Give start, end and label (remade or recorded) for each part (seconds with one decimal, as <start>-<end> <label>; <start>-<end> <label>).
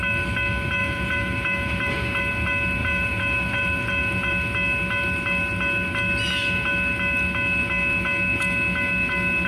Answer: 0.0-0.8 recorded; 0.8-2.2 remade; 2.2-2.8 recorded; 2.8-4.3 remade; 4.3-9.5 recorded